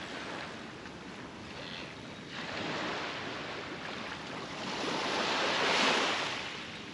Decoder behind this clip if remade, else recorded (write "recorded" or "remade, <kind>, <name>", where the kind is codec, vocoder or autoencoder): recorded